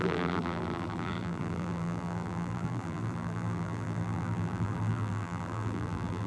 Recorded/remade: remade